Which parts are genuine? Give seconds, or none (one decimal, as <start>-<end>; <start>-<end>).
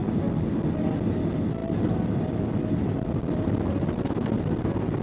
0.0-1.6; 4.6-5.0